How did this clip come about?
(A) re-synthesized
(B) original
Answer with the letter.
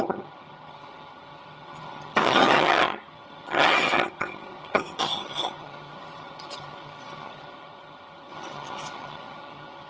A